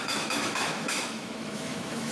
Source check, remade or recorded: remade